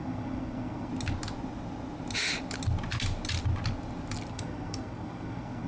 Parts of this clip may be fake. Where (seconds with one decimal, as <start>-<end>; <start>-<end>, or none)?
0.0-0.9; 4.3-5.7